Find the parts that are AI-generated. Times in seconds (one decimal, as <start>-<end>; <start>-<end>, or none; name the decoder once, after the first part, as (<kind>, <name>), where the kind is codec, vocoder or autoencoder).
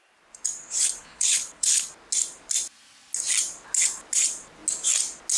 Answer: 1.0-1.9 (codec, HILCodec)